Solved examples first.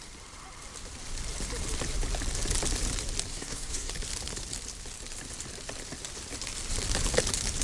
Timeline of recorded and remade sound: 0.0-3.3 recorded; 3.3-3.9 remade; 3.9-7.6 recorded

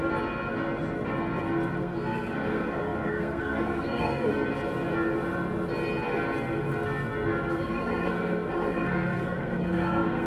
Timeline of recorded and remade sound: 0.0-1.8 recorded; 1.8-4.3 remade; 4.3-7.5 recorded; 7.5-10.3 remade

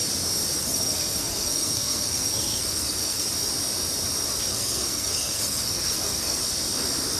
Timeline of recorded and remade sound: 0.0-0.6 recorded; 0.6-3.3 remade; 3.3-4.5 recorded; 4.5-6.4 remade; 6.4-7.2 recorded

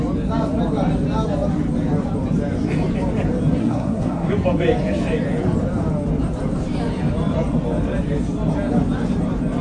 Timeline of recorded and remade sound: 0.0-3.6 recorded; 3.6-4.3 remade; 4.3-9.6 recorded

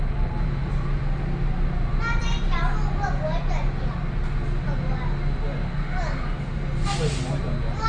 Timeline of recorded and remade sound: 0.0-7.9 recorded